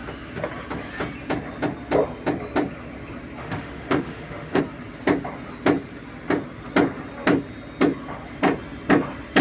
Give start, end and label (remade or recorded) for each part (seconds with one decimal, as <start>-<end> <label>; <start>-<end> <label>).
0.0-3.4 recorded; 3.4-4.6 remade; 4.6-9.4 recorded